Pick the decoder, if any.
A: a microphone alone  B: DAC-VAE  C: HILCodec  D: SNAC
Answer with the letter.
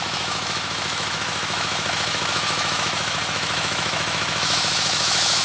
B